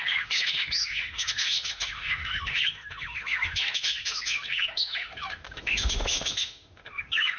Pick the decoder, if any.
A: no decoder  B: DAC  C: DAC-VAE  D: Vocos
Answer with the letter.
C